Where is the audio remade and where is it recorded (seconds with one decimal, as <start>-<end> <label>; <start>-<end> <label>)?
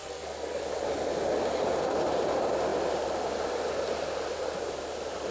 0.0-0.6 remade; 0.6-5.3 recorded